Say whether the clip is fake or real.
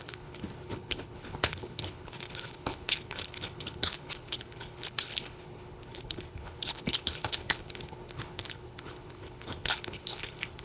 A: fake